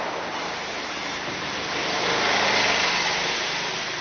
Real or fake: real